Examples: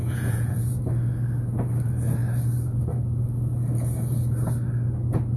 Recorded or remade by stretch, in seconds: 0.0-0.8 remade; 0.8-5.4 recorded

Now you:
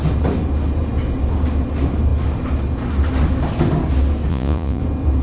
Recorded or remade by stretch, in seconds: 0.0-4.3 recorded; 4.3-4.8 remade; 4.8-5.2 recorded

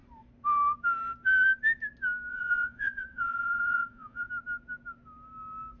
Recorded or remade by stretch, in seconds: 0.0-2.3 recorded; 2.3-4.3 remade; 4.3-5.8 recorded

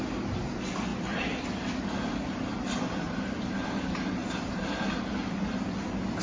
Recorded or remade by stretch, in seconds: 0.0-6.2 recorded

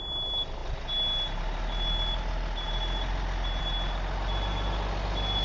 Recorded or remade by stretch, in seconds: 0.0-5.4 recorded

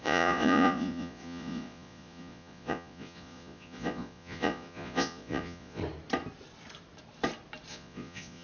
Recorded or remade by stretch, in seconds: 0.0-5.8 remade; 5.8-7.7 recorded; 7.7-8.4 remade

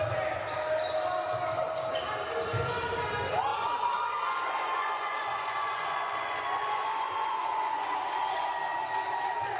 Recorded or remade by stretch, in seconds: 0.0-3.5 recorded; 3.5-8.5 remade; 8.5-9.6 recorded